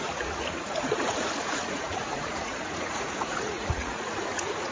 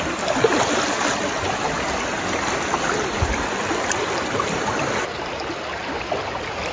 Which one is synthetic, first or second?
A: first